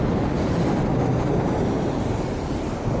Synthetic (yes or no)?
no